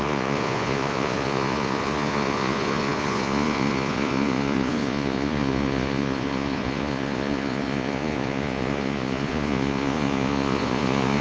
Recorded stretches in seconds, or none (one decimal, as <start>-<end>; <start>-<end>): none